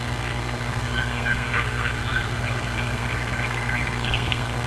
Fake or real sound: fake